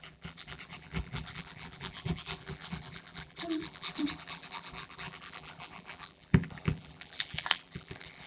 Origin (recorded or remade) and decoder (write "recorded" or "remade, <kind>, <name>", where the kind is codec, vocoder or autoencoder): remade, vocoder, BigVGAN v2